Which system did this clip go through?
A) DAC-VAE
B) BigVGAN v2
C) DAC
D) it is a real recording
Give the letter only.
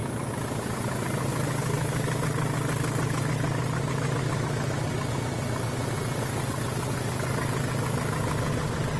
D